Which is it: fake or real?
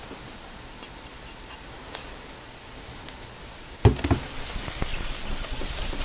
real